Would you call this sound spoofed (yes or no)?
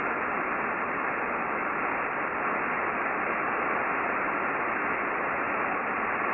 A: no